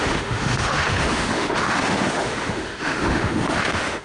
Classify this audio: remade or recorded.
remade